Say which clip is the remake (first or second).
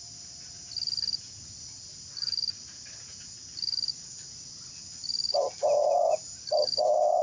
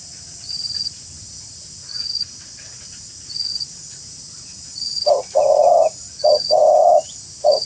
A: second